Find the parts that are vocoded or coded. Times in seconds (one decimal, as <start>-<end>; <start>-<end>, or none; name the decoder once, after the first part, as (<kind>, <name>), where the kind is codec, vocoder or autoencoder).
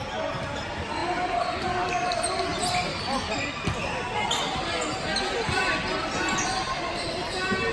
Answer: none